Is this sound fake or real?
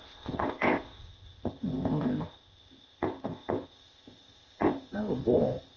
fake